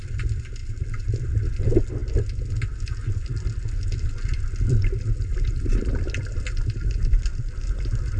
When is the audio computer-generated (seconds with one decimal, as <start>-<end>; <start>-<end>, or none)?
none